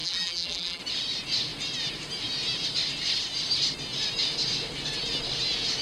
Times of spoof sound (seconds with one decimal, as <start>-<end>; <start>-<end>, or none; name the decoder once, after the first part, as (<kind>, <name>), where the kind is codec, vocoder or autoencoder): 0.0-0.8 (vocoder, BigVGAN v2)